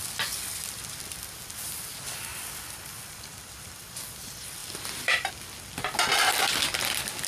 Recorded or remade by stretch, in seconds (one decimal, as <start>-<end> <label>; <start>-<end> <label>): 0.0-0.4 recorded; 0.4-1.4 remade; 1.4-2.3 recorded; 2.3-4.0 remade; 4.0-4.6 recorded; 4.6-5.3 remade; 5.3-7.3 recorded